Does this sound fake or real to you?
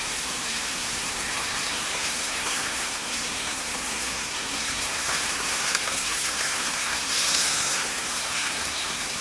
fake